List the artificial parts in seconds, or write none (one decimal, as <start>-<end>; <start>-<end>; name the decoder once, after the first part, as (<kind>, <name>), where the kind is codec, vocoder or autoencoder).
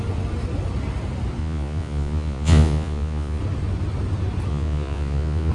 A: 1.4-3.4 (vocoder, Vocos); 4.5-5.5